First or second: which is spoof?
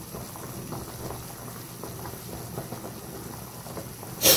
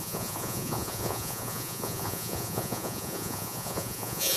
second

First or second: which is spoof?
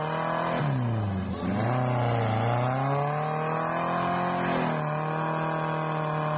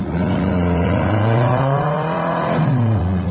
second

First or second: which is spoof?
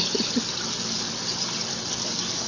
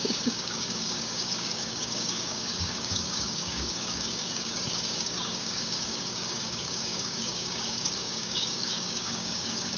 second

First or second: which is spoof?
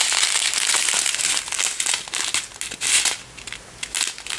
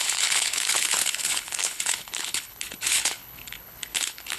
second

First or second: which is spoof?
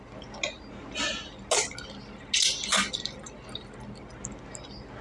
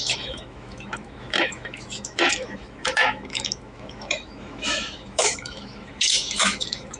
second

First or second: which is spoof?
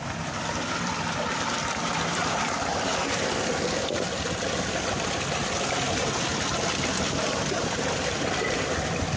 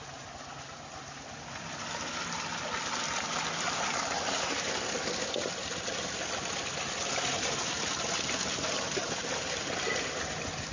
first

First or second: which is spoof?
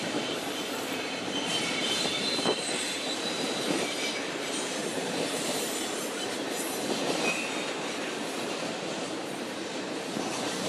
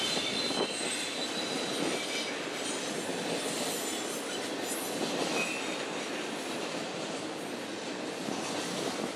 first